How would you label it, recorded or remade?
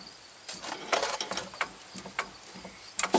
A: recorded